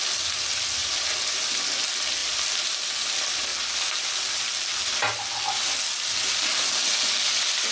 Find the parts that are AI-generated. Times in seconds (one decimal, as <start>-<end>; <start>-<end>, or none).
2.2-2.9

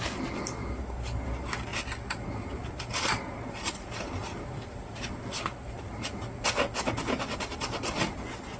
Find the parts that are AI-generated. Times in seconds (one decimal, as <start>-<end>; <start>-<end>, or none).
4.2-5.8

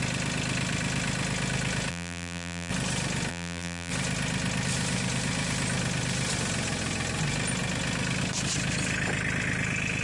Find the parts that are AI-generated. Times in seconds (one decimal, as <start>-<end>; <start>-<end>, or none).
1.9-2.7; 3.3-3.9